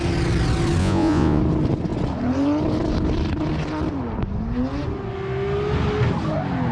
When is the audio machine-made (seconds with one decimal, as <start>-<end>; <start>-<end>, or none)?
0.8-1.4